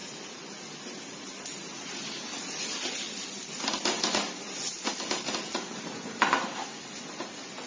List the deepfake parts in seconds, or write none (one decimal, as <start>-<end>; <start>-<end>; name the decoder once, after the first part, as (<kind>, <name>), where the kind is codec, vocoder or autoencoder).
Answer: none